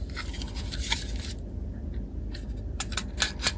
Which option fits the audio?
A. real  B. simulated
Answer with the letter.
A